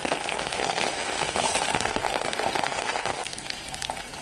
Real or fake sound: fake